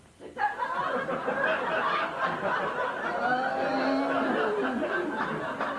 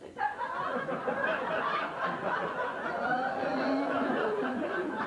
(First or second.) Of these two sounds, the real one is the first